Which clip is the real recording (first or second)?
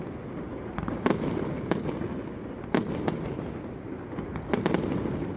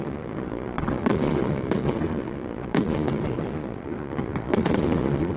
first